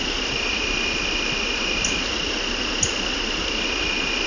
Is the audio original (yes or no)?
yes